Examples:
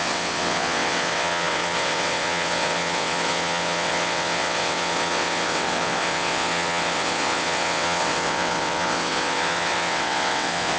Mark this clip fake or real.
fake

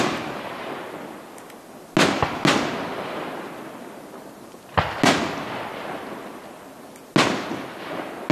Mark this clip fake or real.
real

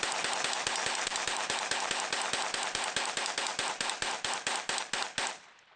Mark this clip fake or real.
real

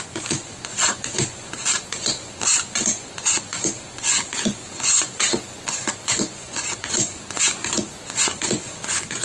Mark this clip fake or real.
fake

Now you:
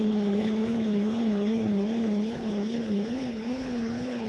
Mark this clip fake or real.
fake